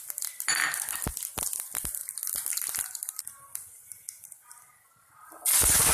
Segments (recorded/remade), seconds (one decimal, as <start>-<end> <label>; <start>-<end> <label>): 0.0-2.0 remade; 2.0-3.1 recorded; 3.1-5.9 remade